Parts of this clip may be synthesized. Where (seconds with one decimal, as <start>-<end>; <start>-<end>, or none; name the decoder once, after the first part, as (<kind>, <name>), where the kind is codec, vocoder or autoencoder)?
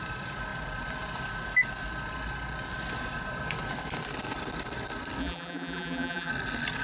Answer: 5.2-6.3 (vocoder, BigVGAN v2)